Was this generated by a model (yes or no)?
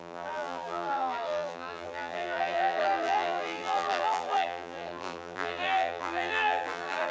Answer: yes